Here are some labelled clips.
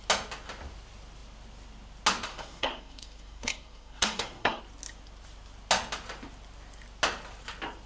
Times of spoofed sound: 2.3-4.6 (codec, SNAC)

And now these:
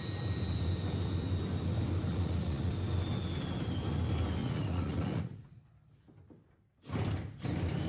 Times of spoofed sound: 2.1-2.7 (vocoder, Vocos); 4.4-5.6

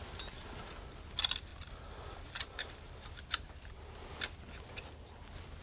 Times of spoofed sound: 1.5-3.8 (vocoder, BigVGAN v2)

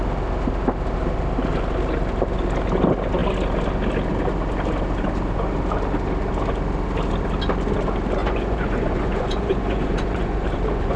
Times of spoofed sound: 8.2-11.0 (vocoder, Vocos)